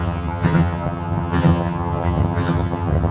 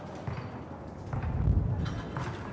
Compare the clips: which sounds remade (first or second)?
first